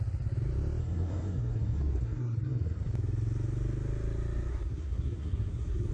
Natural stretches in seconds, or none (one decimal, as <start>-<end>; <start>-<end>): 0.0-0.8; 2.9-4.5

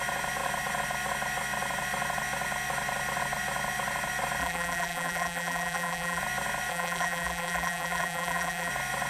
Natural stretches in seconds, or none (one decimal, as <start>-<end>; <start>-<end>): 0.0-4.4; 6.2-6.7; 8.7-9.1

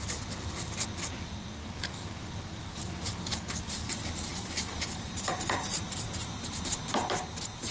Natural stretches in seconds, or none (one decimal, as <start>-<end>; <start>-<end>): 0.0-1.6; 3.9-4.3; 5.1-7.7

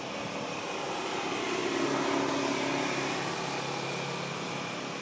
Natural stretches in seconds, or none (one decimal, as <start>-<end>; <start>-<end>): 0.0-5.0